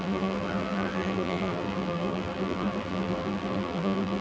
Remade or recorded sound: remade